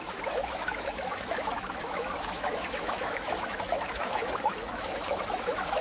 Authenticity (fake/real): fake